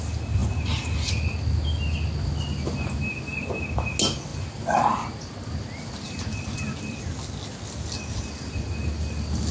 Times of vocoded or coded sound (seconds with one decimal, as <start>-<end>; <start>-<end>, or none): none